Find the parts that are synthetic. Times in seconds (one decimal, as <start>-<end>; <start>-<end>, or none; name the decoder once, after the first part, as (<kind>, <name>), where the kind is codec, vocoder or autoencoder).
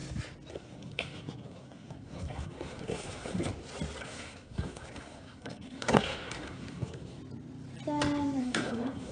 0.5-3.5 (codec, SNAC); 4.0-7.2; 8.4-9.1